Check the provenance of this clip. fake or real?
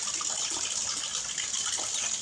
real